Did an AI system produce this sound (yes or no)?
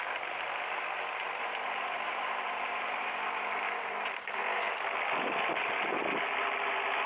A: no